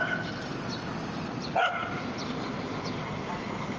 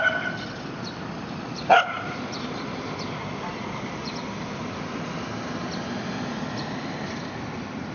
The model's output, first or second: second